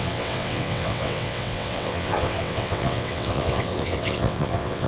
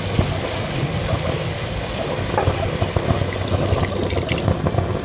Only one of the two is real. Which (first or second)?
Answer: second